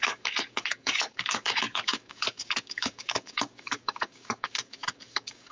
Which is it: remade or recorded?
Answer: remade